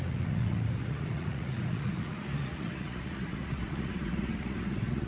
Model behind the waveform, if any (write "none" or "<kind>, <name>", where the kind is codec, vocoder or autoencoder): vocoder, Vocos